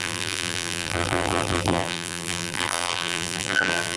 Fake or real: fake